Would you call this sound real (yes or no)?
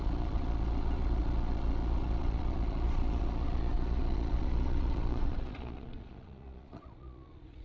no